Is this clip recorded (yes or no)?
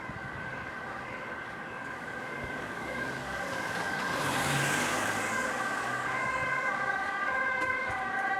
no